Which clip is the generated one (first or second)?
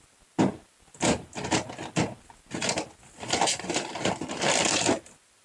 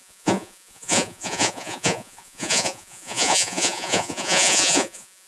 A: second